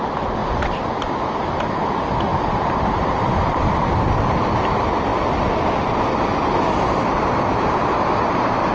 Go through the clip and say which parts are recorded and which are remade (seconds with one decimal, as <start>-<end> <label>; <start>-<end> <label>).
0.0-2.3 recorded; 2.3-3.7 remade; 3.7-8.7 recorded